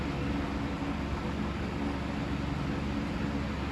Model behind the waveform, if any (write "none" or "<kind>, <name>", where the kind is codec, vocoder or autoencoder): none